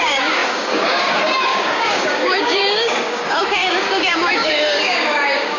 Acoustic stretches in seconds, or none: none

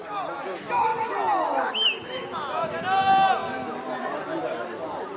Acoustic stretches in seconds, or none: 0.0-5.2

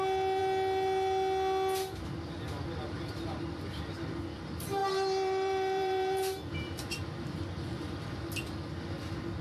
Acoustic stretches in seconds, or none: 0.0-4.8; 6.9-9.4

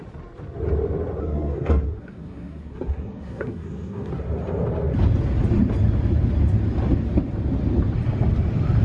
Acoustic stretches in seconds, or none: 0.0-1.2; 4.1-8.8

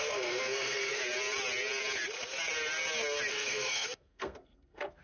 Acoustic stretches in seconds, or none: 1.0-3.3

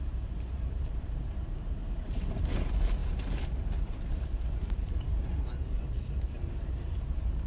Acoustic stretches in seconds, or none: 1.8-2.4